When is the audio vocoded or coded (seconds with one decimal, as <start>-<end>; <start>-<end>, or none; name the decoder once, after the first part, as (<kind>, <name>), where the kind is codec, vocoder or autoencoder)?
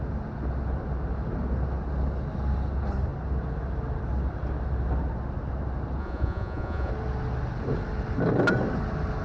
6.0-6.9 (vocoder, Vocos)